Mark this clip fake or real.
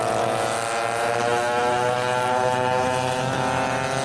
real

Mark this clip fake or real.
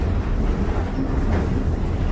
real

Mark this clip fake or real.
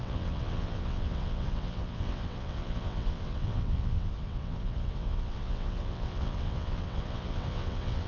fake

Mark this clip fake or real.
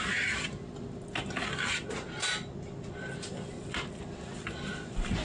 real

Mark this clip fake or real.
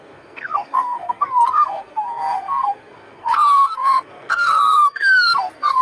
fake